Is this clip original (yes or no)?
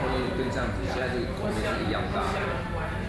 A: no